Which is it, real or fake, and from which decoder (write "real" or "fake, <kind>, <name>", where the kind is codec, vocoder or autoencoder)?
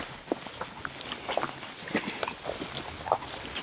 real